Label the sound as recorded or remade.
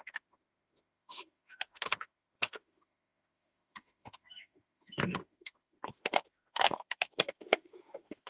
remade